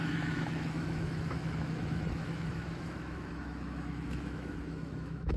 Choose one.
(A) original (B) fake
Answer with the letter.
B